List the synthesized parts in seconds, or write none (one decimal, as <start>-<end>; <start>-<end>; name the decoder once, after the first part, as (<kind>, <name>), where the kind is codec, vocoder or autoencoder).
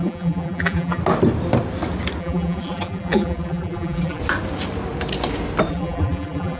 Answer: 0.0-1.0 (vocoder, BigVGAN v2); 2.2-4.2; 5.7-6.6